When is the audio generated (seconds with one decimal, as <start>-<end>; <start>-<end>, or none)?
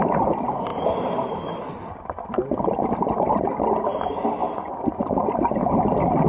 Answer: none